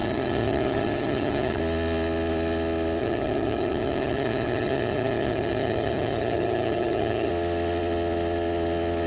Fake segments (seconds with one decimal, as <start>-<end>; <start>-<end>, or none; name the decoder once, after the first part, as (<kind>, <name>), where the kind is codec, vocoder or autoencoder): 0.0-1.6 (vocoder, HiFi-GAN); 3.0-7.3